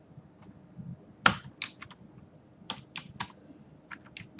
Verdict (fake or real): real